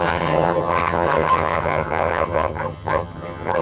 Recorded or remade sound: remade